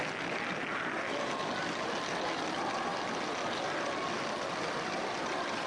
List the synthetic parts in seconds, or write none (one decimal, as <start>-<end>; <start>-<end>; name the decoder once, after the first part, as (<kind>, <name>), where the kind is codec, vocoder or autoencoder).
none

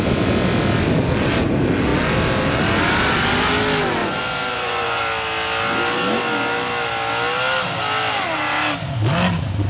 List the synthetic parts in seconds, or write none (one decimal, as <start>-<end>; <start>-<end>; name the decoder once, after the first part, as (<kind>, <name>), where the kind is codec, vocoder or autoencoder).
4.0-5.0 (vocoder, Vocos)

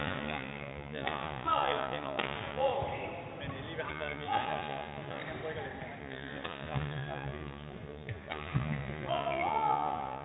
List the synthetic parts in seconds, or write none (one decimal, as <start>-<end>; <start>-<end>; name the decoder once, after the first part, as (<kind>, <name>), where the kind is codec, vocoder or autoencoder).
0.0-2.7 (vocoder, Vocos); 3.9-5.2; 6.0-10.2

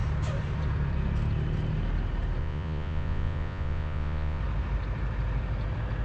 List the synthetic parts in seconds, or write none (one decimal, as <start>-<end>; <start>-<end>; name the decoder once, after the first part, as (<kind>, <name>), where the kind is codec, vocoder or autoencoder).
2.4-4.4 (vocoder, Vocos)

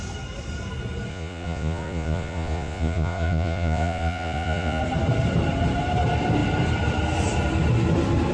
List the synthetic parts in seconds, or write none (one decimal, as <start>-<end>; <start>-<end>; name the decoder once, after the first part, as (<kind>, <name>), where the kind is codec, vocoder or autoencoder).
1.1-4.8 (vocoder, Vocos)

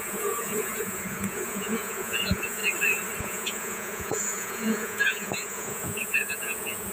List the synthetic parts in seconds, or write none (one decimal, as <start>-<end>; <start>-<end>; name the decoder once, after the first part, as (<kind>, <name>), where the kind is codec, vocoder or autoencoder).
0.0-2.6 (vocoder, Vocos); 3.2-6.9

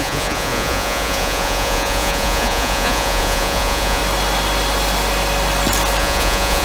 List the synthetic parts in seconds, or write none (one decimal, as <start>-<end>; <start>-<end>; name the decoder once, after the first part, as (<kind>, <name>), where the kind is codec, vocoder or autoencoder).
0.0-4.0 (vocoder, Vocos); 6.0-6.6

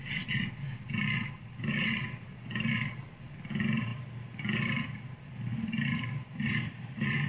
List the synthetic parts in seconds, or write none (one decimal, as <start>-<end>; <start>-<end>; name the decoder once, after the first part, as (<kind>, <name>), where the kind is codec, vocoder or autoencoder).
none